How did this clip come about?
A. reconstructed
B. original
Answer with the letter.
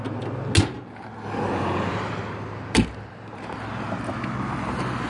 B